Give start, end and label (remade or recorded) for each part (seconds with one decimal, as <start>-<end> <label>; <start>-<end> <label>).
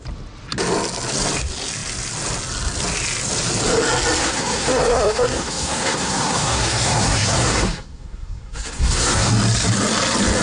0.0-4.2 recorded; 4.2-9.3 remade; 9.3-10.4 recorded